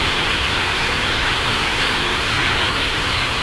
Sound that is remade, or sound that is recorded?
remade